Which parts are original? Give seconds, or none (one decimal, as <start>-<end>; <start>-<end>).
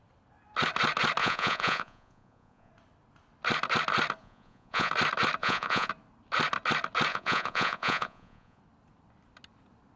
0.0-1.2; 2.7-4.2; 4.9-5.4; 5.9-7.1; 8.6-10.0